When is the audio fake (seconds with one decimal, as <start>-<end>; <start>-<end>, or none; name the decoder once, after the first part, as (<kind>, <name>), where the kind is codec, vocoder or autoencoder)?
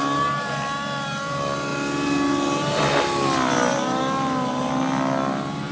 none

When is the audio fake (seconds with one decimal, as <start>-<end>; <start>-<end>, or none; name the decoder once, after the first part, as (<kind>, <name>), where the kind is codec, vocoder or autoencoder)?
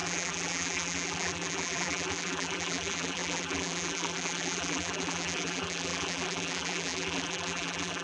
0.0-8.0 (vocoder, BigVGAN v2)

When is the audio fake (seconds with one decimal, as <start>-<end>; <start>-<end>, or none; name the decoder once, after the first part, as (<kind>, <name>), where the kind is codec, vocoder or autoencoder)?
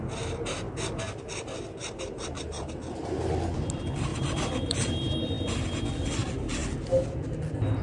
1.8-2.8 (vocoder, BigVGAN v2); 4.1-5.2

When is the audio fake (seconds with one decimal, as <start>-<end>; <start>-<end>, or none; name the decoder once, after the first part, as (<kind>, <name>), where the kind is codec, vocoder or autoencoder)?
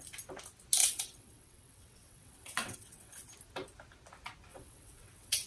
0.8-3.3 (vocoder, WaveNeXt); 4.5-5.5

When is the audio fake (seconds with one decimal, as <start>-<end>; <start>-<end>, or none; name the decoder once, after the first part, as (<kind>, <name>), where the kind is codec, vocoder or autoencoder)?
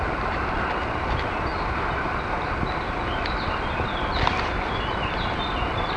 none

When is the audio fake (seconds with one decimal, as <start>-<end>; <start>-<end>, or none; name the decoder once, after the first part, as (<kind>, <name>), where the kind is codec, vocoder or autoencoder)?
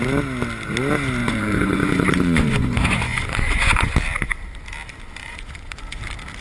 1.2-4.0 (vocoder, Vocos); 5.2-6.0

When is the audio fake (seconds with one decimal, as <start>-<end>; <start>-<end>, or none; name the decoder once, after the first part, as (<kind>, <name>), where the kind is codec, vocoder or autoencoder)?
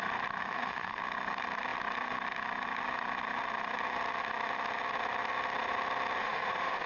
0.4-1.0 (autoencoder, DAC-VAE); 6.2-6.9